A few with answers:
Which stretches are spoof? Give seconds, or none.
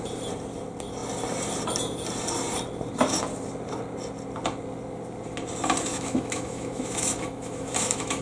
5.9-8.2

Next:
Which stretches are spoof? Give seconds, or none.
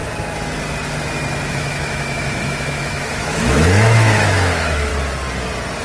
1.5-4.9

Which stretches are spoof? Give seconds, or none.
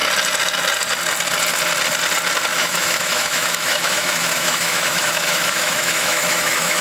2.5-6.8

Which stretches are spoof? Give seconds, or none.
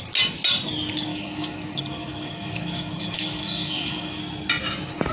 1.1-4.2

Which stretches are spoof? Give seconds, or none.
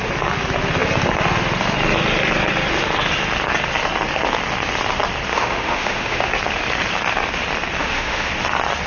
5.3-6.3; 7.8-8.3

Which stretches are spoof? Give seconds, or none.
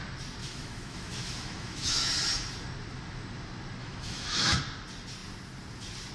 0.4-2.1; 3.8-4.6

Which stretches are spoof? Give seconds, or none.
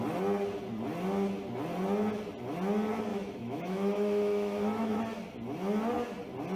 3.1-5.0